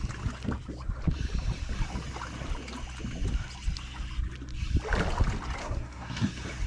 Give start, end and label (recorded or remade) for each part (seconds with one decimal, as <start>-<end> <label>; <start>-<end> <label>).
0.0-5.6 recorded; 5.6-6.3 remade; 6.3-6.7 recorded